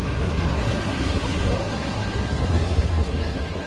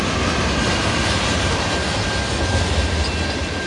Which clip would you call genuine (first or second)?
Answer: second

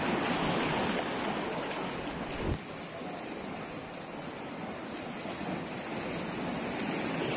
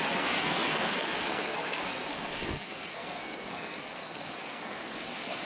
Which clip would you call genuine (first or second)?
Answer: first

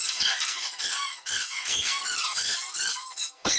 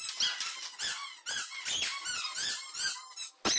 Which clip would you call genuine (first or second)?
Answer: second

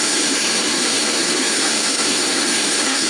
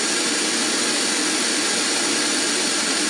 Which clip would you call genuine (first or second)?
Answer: second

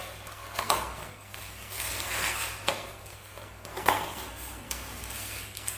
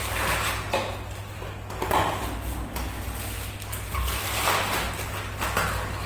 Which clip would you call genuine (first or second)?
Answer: second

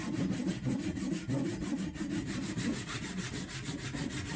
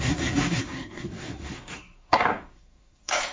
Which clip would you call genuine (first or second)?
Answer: first